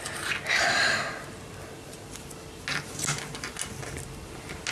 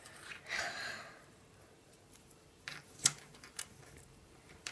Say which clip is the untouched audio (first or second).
first